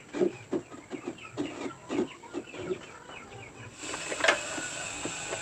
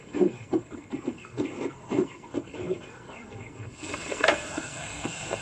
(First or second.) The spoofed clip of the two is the second